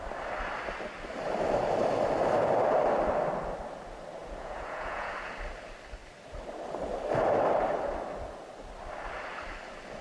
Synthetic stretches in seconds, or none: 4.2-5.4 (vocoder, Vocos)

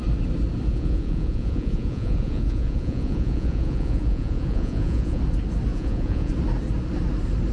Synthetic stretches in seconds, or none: 0.7-5.2 (vocoder, Vocos); 5.7-6.3

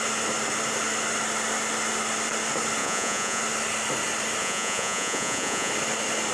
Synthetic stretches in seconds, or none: 2.8-3.4 (vocoder, Vocos); 4.4-5.7

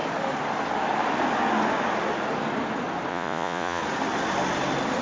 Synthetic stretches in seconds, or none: 3.1-3.8 (vocoder, Vocos)

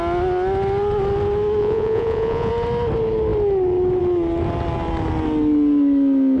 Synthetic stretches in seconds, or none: 1.6-2.5 (vocoder, Vocos)

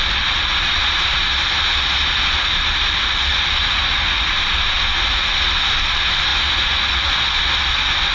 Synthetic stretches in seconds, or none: 3.3-4.3 (vocoder, Vocos); 6.3-7.1

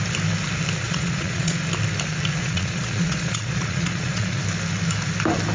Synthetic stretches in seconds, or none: 0.8-1.6 (vocoder, Vocos); 2.4-4.4